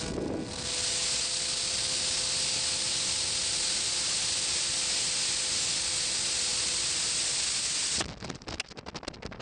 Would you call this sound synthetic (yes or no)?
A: no